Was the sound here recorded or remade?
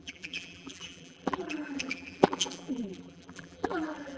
remade